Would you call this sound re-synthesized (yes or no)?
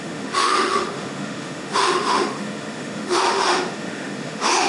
yes